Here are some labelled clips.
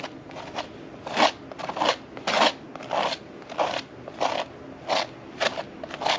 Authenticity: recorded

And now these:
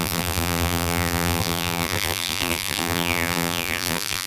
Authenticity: remade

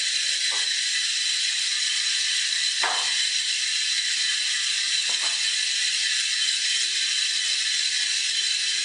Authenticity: remade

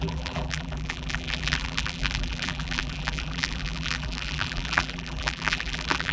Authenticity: remade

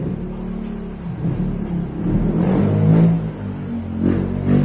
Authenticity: recorded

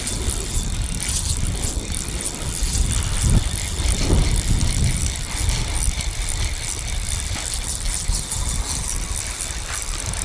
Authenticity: remade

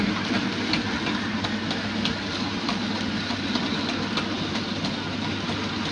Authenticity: recorded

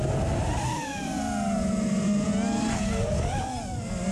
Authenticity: recorded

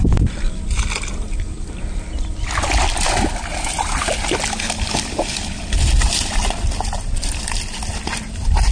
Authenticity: recorded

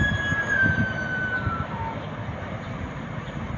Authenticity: remade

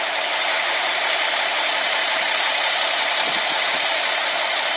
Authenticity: remade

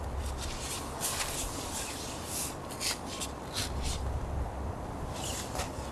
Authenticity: recorded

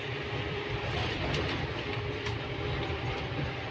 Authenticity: remade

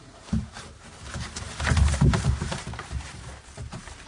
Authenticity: remade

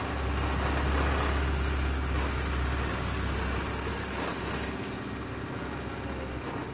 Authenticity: recorded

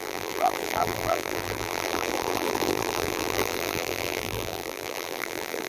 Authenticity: remade